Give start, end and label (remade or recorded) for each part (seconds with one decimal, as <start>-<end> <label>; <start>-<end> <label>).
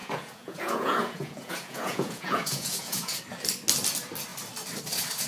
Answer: 0.0-3.2 remade; 3.2-5.3 recorded